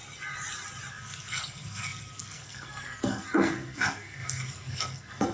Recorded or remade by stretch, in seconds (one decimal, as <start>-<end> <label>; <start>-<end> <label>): 0.0-0.9 recorded; 0.9-5.3 remade